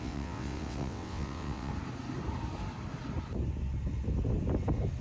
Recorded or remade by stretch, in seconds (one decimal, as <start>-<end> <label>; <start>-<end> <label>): 0.0-1.7 remade; 1.7-5.0 recorded